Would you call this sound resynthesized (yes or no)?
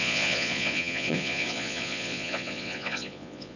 yes